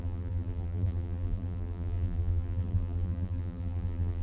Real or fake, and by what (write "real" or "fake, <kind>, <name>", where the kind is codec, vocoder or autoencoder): fake, vocoder, BigVGAN v2